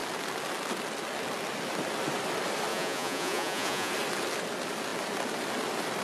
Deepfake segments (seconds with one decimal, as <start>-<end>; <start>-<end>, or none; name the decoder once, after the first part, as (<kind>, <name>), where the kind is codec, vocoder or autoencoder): 2.7-3.9 (vocoder, Vocos)